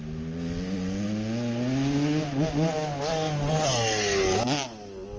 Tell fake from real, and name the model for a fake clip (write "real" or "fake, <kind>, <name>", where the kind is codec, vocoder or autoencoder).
real